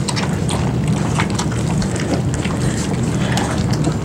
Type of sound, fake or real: real